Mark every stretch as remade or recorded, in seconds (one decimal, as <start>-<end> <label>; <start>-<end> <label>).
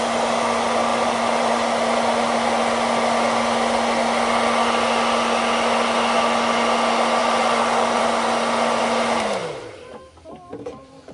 0.0-0.9 recorded; 0.9-2.6 remade; 2.6-7.2 recorded; 7.2-8.8 remade; 8.8-9.4 recorded; 9.4-10.5 remade; 10.5-11.1 recorded